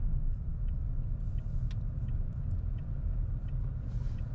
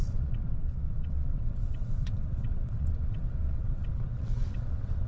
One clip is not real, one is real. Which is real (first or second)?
first